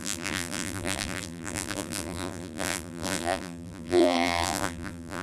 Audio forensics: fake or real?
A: fake